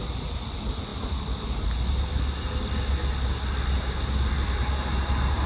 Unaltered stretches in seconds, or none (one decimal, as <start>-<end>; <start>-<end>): 0.0-5.5